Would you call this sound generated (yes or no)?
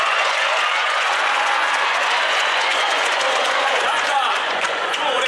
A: yes